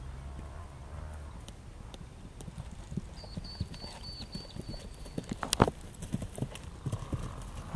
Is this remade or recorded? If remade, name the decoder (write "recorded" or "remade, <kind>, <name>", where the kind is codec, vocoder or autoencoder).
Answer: recorded